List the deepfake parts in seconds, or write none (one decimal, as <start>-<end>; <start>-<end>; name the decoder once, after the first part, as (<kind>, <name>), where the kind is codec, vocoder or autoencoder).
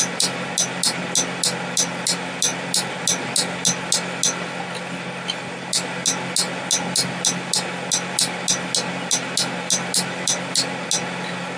none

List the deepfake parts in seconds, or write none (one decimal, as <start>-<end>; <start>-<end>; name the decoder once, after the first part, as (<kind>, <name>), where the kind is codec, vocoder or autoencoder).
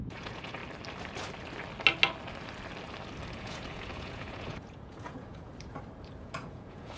0.0-0.6 (vocoder, Vocos); 3.3-5.5; 6.2-7.0